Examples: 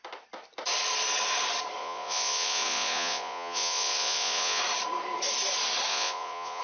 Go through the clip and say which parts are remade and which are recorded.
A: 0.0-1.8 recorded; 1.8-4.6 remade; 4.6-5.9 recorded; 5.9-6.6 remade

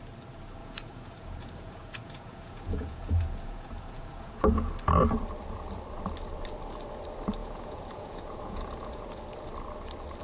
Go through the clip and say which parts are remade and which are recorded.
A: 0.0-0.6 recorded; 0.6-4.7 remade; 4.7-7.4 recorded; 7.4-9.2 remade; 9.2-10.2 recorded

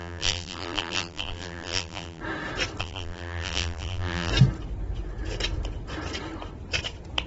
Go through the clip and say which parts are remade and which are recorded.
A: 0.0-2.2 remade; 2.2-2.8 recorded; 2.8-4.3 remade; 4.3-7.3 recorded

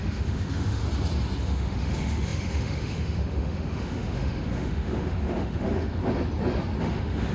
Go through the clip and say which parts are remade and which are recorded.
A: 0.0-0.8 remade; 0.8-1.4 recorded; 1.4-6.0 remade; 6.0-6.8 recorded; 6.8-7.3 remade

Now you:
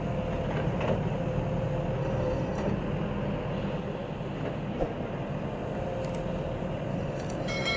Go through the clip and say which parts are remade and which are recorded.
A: 0.0-2.0 recorded; 2.0-2.7 remade; 2.7-6.9 recorded; 6.9-7.8 remade